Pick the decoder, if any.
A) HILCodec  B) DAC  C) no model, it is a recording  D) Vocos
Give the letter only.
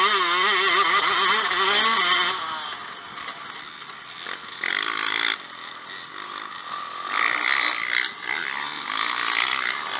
C